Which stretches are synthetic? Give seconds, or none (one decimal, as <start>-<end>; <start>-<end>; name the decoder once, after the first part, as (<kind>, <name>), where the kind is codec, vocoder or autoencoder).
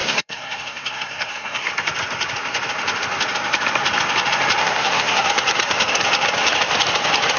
0.0-1.7 (codec, SNAC); 4.6-5.3